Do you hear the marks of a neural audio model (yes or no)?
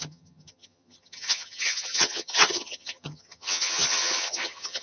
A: yes